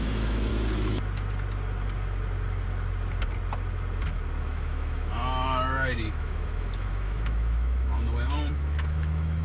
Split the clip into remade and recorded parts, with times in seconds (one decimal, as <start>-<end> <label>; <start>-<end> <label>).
0.0-0.5 remade; 0.5-4.4 recorded; 4.4-9.4 remade